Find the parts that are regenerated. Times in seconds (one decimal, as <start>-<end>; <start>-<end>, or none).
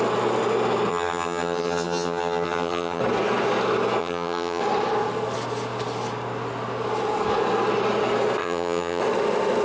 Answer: 0.9-3.0; 4.0-4.6; 8.4-9.0